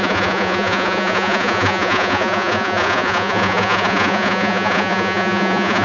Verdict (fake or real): fake